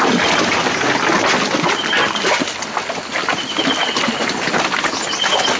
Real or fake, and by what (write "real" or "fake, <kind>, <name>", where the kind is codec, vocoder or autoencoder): real